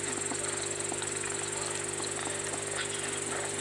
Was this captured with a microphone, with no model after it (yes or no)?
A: yes